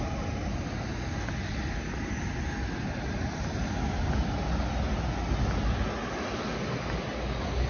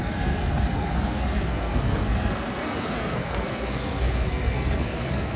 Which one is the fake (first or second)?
second